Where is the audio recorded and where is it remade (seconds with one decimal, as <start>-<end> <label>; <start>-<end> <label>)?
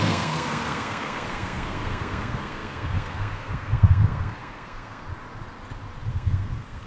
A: 0.0-5.1 remade; 5.1-6.1 recorded; 6.1-6.9 remade